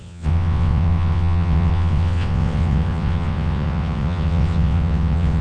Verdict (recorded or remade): remade